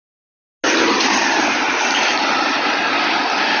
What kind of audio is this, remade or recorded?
recorded